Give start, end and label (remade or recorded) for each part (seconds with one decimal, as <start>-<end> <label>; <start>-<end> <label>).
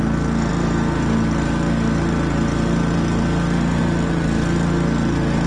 0.0-5.5 recorded